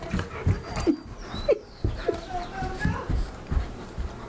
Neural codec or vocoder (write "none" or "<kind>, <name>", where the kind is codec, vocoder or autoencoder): vocoder, BigVGAN v2